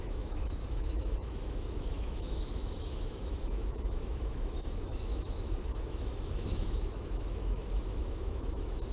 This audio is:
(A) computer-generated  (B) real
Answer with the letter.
A